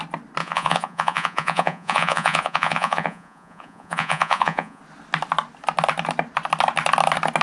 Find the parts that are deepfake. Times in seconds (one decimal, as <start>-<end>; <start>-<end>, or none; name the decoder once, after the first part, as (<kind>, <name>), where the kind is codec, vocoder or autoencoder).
0.4-4.8 (vocoder, Vocos)